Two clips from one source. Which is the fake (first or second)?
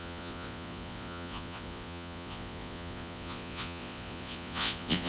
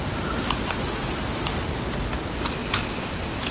first